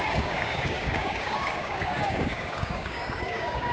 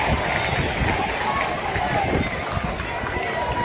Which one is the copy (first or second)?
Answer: first